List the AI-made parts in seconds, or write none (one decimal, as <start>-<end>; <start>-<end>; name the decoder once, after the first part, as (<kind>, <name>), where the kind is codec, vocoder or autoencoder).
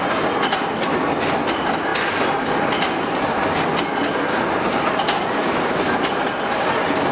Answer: none